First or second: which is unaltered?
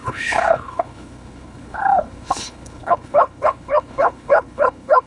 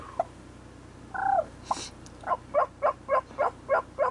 second